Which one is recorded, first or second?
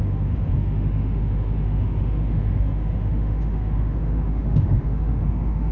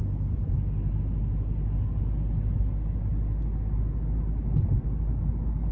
second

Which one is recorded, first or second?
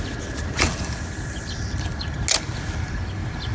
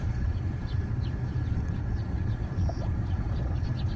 first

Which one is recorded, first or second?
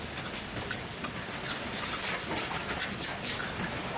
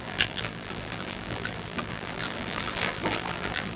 first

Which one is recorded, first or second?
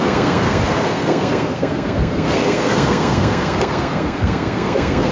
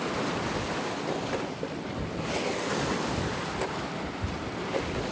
second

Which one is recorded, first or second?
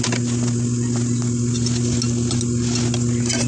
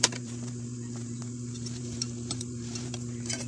first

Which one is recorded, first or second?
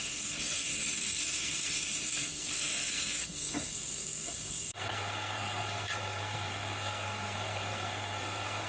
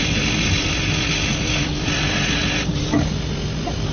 second